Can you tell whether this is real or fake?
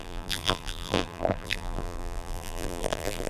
fake